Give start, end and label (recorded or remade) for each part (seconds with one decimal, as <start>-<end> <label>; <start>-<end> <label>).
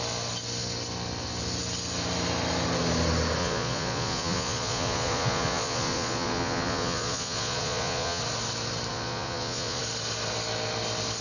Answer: 0.0-3.4 recorded; 3.4-8.2 remade; 8.2-8.9 recorded; 8.9-9.8 remade; 9.8-11.2 recorded